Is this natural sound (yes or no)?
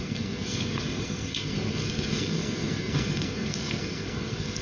no